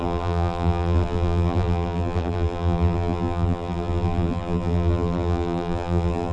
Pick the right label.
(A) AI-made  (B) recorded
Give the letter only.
A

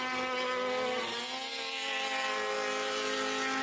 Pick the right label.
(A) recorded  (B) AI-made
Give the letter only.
A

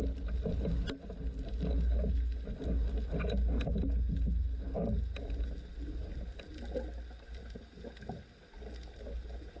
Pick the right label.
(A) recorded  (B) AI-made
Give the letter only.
A